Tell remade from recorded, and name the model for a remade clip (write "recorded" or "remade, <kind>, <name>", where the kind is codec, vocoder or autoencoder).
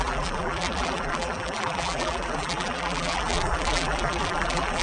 remade, vocoder, BigVGAN v2